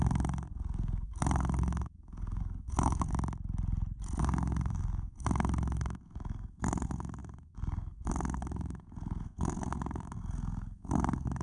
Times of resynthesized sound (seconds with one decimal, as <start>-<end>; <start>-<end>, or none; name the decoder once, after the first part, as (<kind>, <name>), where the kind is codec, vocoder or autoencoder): 0.0-3.1 (codec, SNAC); 4.2-11.4